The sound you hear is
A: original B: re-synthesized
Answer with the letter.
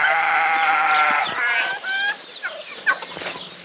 B